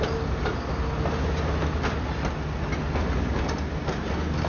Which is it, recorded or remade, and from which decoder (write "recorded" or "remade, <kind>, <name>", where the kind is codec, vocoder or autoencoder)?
recorded